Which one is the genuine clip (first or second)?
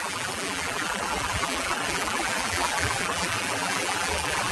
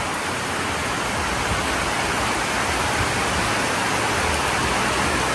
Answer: second